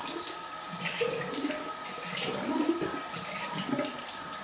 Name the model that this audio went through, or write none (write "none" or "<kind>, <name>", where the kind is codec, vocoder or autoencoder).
none